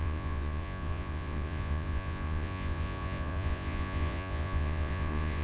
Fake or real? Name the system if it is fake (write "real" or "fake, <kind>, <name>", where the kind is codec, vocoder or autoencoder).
fake, vocoder, Vocos